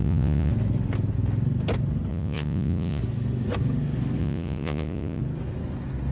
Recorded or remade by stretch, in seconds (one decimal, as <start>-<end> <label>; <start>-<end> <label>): 0.0-0.5 remade; 0.5-2.1 recorded; 2.1-3.0 remade; 3.0-4.2 recorded; 4.2-5.2 remade; 5.2-6.1 recorded